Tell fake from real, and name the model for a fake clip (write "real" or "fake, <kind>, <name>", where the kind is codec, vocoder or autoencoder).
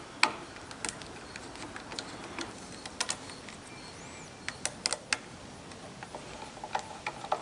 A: real